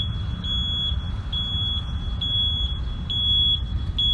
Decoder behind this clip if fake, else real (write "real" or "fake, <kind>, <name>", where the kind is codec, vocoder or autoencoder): real